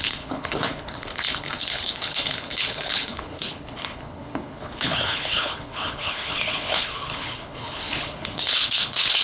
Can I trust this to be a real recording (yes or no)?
no